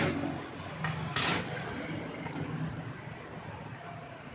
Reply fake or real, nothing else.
real